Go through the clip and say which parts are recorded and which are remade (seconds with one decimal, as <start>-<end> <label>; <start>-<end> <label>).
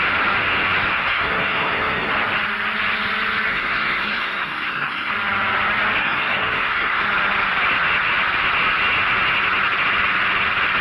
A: 0.0-0.9 recorded; 0.9-2.1 remade; 2.1-3.5 recorded; 3.5-5.1 remade; 5.1-6.0 recorded; 6.0-7.0 remade; 7.0-10.8 recorded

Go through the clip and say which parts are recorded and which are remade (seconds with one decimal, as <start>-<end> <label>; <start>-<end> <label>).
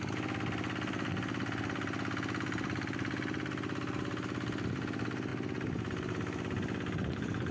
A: 0.0-7.5 recorded